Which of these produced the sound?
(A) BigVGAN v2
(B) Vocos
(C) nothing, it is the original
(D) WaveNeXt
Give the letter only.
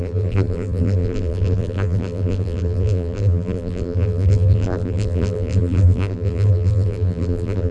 A